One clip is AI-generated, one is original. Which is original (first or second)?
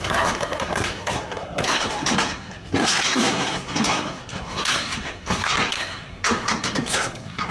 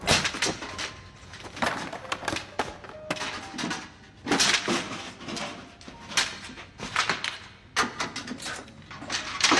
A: second